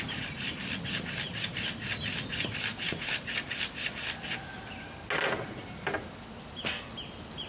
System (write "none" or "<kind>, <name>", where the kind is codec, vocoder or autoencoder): none